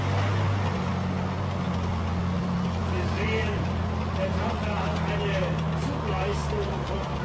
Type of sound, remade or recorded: recorded